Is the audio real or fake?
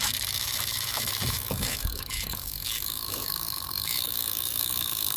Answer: fake